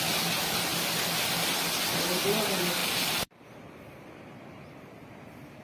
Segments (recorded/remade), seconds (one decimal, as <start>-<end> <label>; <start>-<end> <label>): 0.0-2.8 recorded; 2.8-4.1 remade; 4.1-5.6 recorded